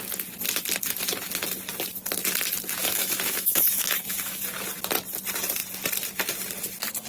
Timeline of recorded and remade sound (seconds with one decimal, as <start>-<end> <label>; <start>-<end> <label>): 0.0-2.8 recorded; 2.8-4.4 remade; 4.4-7.1 recorded